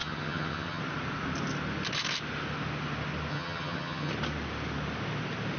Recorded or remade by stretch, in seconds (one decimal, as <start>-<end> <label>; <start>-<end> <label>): 0.0-0.8 remade; 0.8-3.3 recorded; 3.3-4.1 remade; 4.1-5.6 recorded